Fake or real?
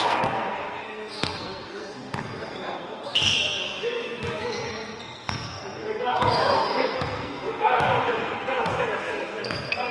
fake